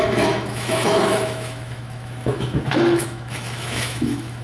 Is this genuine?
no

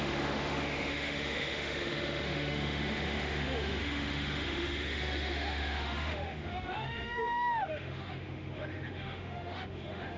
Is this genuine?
no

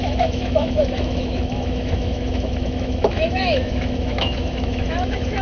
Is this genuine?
no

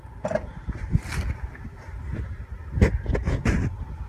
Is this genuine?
yes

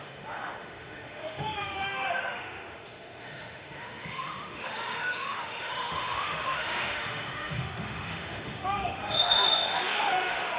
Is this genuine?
no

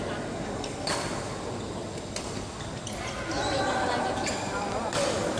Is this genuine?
yes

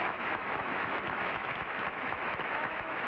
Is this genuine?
no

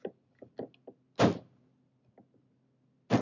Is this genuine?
yes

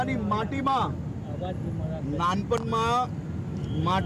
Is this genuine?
yes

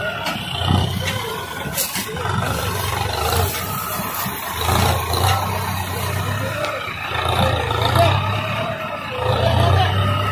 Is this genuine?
yes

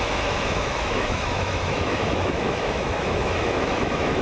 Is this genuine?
no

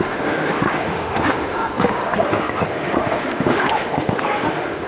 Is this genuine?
no